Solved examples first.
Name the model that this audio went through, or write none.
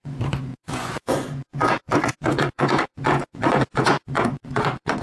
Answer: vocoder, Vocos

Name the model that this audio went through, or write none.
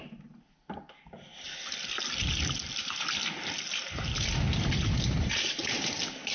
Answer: none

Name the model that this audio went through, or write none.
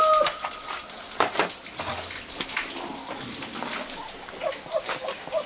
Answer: none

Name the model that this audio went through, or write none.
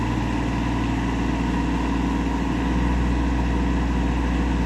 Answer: none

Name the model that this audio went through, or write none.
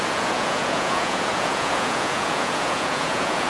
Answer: vocoder, Vocos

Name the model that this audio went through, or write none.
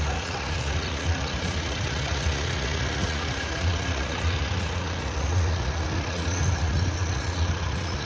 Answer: vocoder, Vocos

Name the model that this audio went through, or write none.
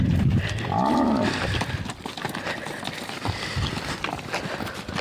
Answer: none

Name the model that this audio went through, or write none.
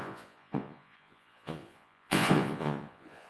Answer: vocoder, Vocos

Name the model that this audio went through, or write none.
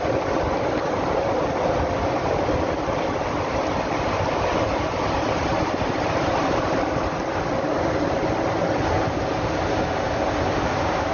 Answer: none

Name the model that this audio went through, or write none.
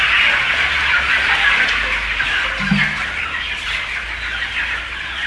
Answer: none